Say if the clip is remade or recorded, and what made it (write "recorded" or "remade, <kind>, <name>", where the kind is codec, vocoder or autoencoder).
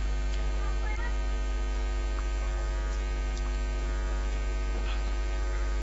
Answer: recorded